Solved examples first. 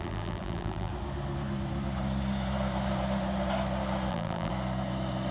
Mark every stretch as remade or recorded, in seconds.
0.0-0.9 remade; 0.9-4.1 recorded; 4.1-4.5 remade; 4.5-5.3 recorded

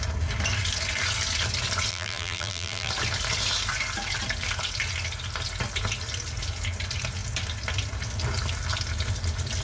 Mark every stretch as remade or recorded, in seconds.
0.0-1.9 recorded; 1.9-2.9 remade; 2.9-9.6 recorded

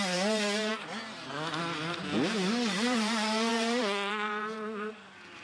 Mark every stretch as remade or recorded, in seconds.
0.0-0.7 remade; 0.7-2.5 recorded; 2.5-5.4 remade

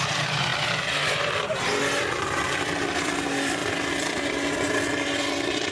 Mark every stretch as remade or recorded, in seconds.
0.0-3.6 remade; 3.6-5.3 recorded; 5.3-5.7 remade

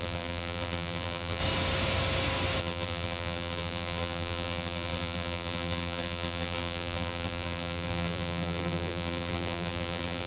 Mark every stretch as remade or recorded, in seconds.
0.0-1.4 remade; 1.4-2.6 recorded; 2.6-10.3 remade